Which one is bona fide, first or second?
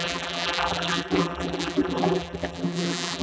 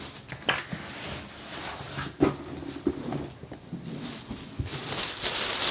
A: second